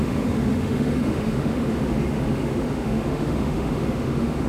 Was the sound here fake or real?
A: fake